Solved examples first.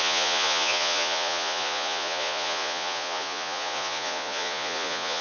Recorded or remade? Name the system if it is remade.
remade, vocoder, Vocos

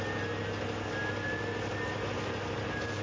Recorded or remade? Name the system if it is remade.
recorded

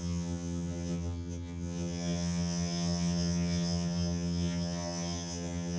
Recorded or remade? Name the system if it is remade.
remade, vocoder, HiFi-GAN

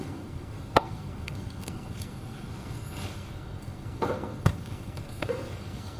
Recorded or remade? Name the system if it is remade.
remade, codec, SNAC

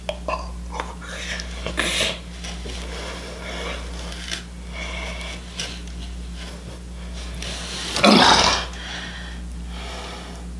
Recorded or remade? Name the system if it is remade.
recorded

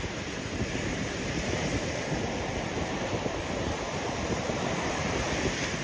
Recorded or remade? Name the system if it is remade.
remade, vocoder, BigVGAN v2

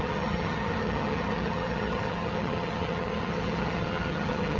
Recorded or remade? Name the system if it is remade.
remade, vocoder, HiFi-GAN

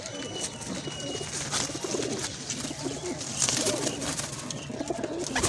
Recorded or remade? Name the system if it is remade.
recorded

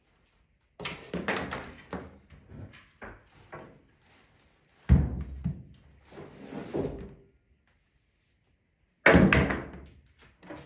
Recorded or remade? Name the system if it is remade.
recorded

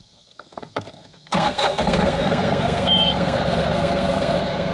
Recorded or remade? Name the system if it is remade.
remade, codec, SNAC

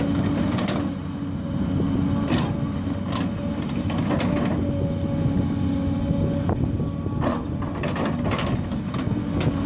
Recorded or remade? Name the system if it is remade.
recorded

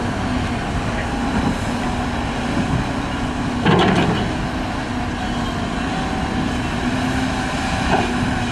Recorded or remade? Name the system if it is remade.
recorded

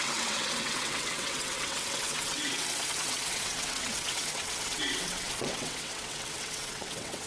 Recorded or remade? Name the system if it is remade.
remade, vocoder, WaveNeXt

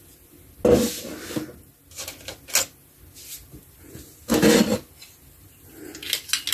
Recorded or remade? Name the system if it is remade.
recorded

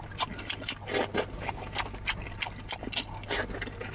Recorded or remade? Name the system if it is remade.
recorded